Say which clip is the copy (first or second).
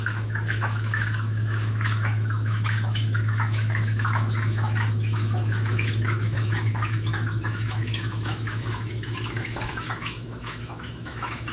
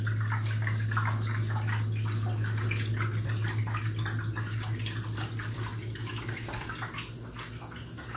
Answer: first